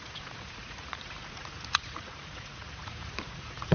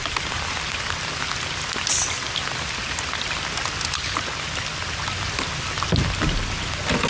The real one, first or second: second